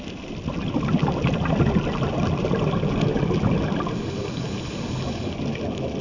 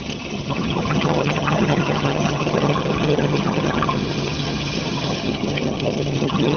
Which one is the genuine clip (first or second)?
first